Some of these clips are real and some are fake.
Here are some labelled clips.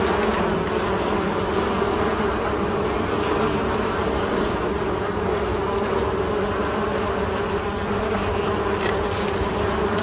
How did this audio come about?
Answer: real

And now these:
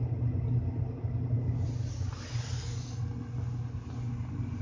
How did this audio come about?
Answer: real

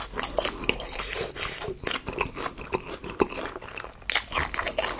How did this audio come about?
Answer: real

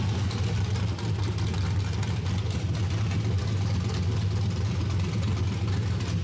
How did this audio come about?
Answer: real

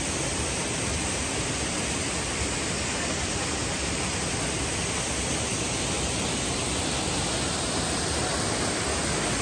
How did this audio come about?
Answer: real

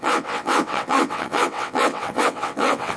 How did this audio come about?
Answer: fake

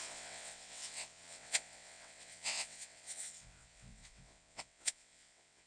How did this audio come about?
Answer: fake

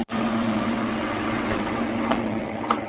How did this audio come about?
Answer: fake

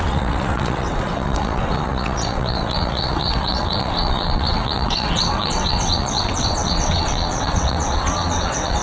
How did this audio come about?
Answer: fake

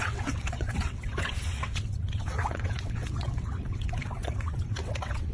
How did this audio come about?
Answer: fake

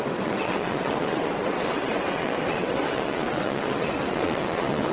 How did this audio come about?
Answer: fake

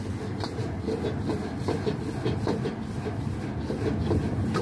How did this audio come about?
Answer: real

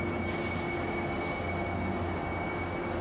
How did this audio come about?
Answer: real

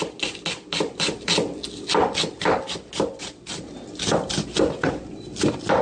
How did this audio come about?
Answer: real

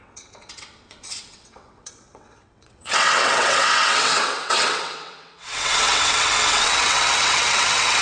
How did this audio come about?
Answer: fake